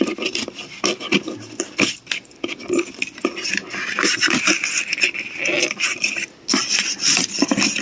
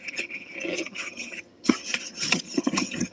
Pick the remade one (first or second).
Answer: second